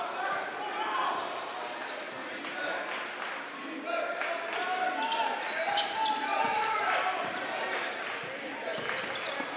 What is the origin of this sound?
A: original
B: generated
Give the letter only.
A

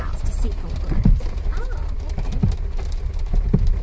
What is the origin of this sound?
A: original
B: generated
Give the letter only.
A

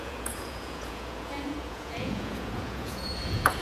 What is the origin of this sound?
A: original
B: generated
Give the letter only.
B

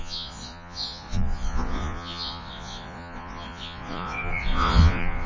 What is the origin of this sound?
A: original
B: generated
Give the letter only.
B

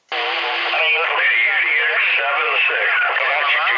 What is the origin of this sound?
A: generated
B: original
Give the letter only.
B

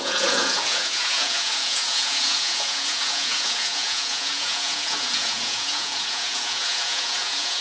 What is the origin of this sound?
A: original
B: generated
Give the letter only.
B